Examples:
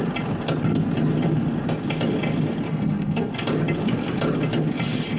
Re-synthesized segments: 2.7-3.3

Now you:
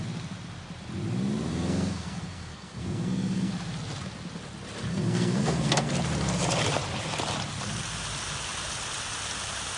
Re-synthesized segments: 1.5-3.5; 4.9-5.9

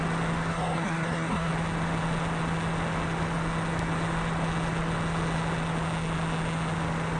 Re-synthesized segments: 0.5-1.5

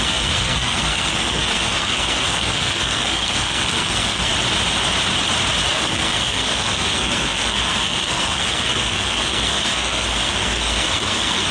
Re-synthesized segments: 0.0-4.3; 5.7-11.5